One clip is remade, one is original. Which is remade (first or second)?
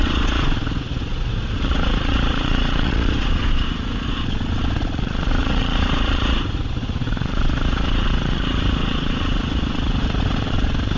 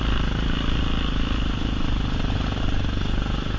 first